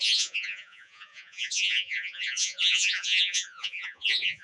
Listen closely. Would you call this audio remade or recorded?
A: remade